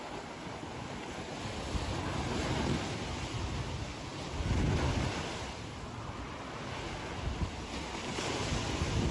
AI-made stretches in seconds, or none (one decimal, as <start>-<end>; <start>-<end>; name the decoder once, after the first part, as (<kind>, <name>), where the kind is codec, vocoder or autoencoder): none